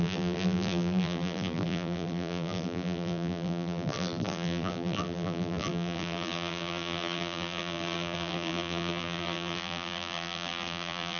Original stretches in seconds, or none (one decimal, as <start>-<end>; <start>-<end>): none